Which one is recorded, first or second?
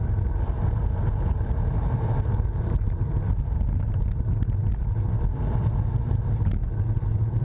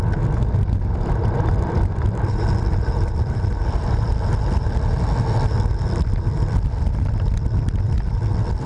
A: first